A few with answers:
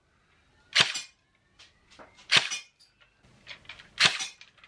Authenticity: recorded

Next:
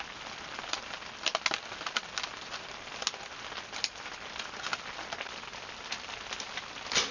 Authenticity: recorded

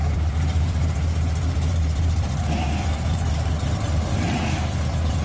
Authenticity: remade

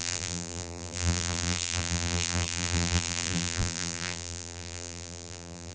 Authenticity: remade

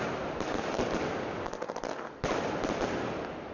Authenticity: recorded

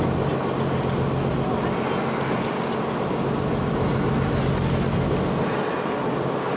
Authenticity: recorded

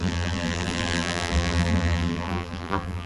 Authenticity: remade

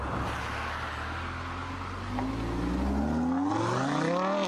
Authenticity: recorded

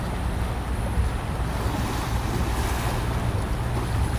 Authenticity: recorded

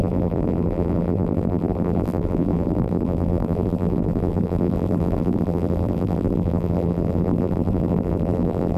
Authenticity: remade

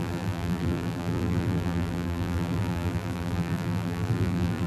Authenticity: remade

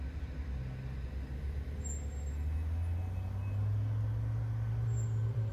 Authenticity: recorded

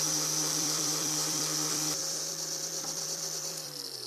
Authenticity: remade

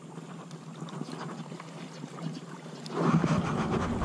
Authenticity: recorded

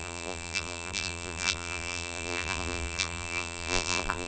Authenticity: remade